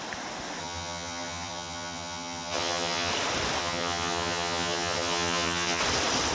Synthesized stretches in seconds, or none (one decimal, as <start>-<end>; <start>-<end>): 0.6-3.1; 3.6-5.8